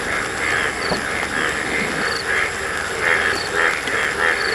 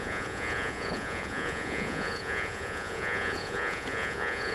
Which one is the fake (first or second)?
second